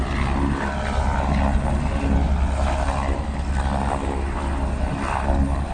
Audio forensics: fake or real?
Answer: real